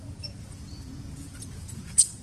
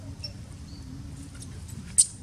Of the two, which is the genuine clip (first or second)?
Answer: second